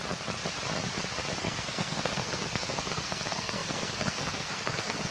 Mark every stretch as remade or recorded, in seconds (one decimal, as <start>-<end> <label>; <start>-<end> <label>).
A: 0.0-1.4 recorded; 1.4-5.1 remade

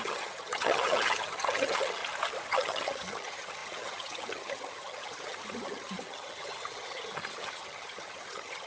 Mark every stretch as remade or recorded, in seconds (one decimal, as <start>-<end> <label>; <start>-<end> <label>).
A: 0.0-2.0 remade; 2.0-2.5 recorded; 2.5-8.7 remade

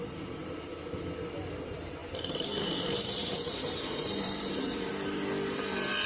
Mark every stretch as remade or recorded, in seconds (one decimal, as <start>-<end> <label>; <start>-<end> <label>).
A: 0.0-2.0 recorded; 2.0-4.9 remade; 4.9-6.1 recorded

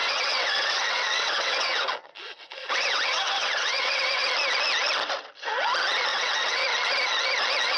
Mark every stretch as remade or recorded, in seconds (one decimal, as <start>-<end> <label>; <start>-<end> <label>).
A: 0.0-4.3 remade; 4.3-6.1 recorded; 6.1-6.6 remade; 6.6-7.8 recorded

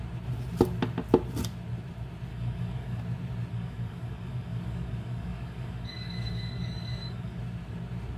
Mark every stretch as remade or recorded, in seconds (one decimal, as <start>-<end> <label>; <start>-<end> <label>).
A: 0.0-2.3 recorded; 2.3-3.0 remade; 3.0-3.5 recorded; 3.5-7.4 remade; 7.4-8.2 recorded

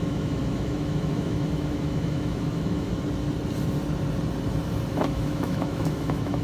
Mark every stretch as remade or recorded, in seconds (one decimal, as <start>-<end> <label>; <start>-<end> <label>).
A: 0.0-2.9 remade; 2.9-4.9 recorded; 4.9-6.4 remade

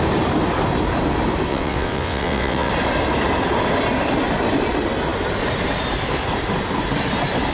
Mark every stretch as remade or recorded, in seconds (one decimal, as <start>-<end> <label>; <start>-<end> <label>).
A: 0.0-1.5 recorded; 1.5-2.7 remade; 2.7-7.5 recorded